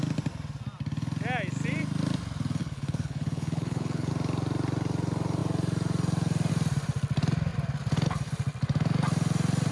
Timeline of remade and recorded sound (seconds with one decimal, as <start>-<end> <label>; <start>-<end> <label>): 0.0-2.6 recorded; 2.6-4.1 remade; 4.1-9.7 recorded